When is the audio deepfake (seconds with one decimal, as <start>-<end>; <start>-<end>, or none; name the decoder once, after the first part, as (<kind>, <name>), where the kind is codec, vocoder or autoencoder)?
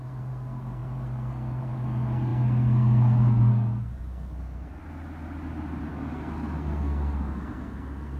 0.0-4.8 (codec, SNAC); 5.9-8.2